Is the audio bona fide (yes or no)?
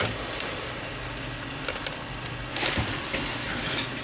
yes